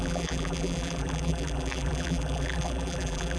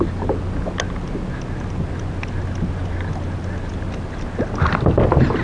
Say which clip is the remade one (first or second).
first